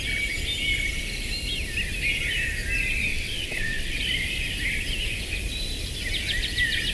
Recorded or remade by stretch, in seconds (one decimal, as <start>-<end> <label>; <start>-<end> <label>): 0.0-3.1 recorded; 3.1-4.0 remade; 4.0-6.9 recorded